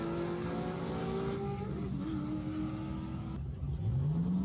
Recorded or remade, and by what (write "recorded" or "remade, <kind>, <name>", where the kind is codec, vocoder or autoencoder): recorded